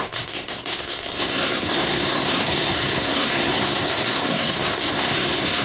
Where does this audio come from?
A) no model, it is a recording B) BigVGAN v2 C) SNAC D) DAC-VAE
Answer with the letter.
C